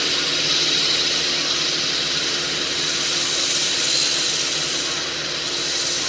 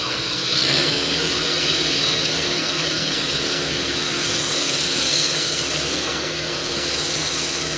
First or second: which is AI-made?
second